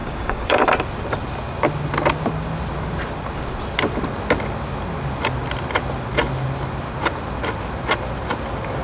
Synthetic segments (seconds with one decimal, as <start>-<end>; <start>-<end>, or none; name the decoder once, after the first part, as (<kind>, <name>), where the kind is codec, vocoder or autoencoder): 0.0-0.7 (codec, DAC)